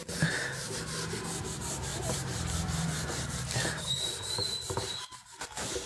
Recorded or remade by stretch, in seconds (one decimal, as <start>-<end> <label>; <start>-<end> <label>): 0.0-1.9 recorded; 1.9-5.4 remade; 5.4-5.9 recorded